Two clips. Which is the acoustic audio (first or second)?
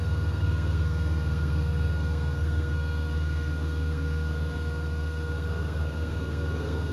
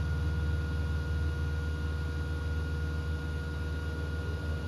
second